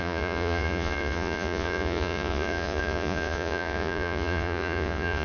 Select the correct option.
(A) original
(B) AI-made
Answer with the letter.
B